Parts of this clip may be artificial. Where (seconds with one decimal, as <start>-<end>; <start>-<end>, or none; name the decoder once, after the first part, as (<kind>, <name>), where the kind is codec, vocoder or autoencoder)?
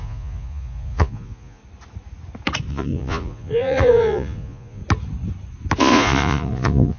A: 0.0-1.6 (vocoder, Vocos); 2.7-4.8; 5.8-7.0